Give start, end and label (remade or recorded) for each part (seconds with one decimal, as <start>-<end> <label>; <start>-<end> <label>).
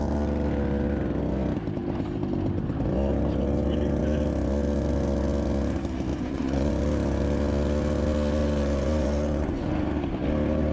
0.0-6.1 recorded; 6.1-6.7 remade; 6.7-8.4 recorded; 8.4-9.7 remade; 9.7-10.7 recorded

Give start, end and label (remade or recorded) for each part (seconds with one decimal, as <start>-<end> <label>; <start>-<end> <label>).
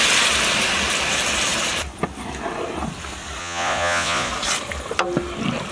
0.0-3.4 recorded; 3.4-4.3 remade; 4.3-5.7 recorded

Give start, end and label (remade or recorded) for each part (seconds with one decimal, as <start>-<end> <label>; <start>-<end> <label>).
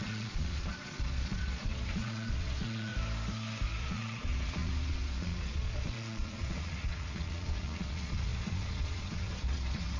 0.0-2.9 remade; 2.9-3.8 recorded; 3.8-10.0 remade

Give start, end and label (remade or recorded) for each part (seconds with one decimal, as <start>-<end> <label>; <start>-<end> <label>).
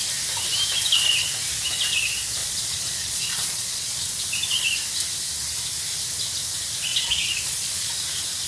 0.0-2.4 recorded; 2.4-4.2 remade; 4.2-6.9 recorded; 6.9-7.9 remade; 7.9-8.5 recorded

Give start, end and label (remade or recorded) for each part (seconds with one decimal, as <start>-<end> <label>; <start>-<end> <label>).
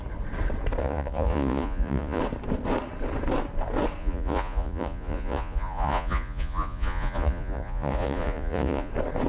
0.0-0.8 recorded; 0.8-2.2 remade; 2.2-4.0 recorded; 4.0-8.9 remade; 8.9-9.3 recorded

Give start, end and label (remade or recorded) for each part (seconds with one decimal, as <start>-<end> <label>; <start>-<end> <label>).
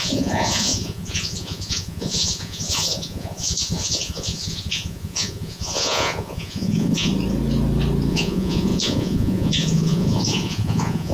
0.0-7.1 remade; 7.1-8.1 recorded; 8.1-11.1 remade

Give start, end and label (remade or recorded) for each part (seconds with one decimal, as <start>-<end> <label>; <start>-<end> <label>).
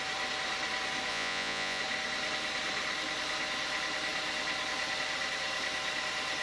0.0-1.1 recorded; 1.1-1.8 remade; 1.8-6.4 recorded